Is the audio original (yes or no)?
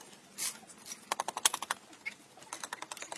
yes